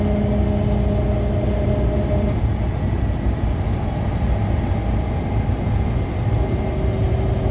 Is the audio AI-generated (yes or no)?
no